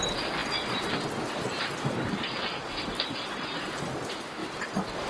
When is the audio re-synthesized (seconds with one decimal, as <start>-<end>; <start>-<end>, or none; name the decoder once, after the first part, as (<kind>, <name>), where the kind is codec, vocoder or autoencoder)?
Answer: none